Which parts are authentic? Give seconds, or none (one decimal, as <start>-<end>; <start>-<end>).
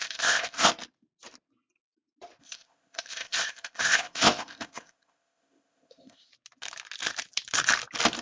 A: 0.7-2.4; 6.3-8.2